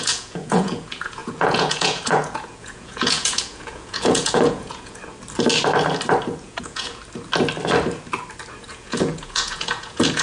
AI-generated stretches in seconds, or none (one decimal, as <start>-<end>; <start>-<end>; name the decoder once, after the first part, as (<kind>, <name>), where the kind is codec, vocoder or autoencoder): 0.0-5.0 (vocoder, Vocos); 6.4-7.0; 8.6-10.2